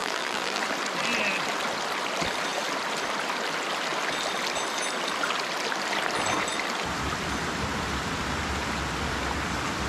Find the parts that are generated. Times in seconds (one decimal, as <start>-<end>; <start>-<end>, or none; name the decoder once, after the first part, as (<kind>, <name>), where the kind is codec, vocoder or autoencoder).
0.0-0.6 (vocoder, BigVGAN v2)